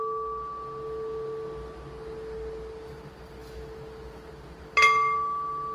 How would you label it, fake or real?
real